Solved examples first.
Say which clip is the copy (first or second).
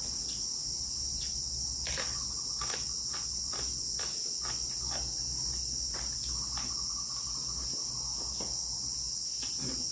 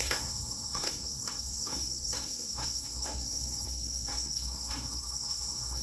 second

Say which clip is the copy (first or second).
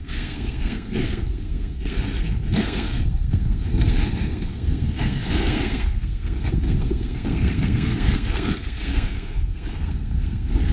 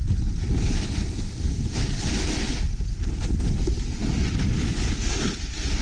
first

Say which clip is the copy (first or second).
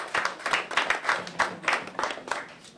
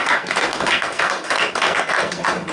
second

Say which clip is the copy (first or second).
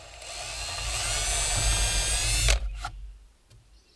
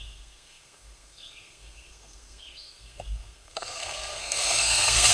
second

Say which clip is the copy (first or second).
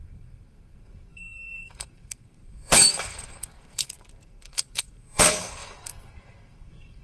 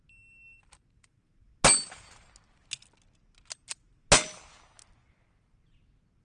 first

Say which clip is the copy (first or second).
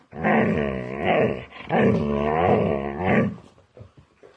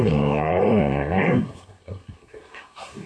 second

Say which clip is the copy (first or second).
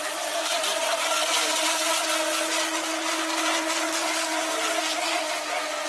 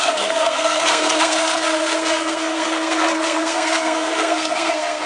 second